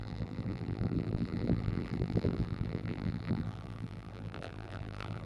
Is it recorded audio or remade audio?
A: remade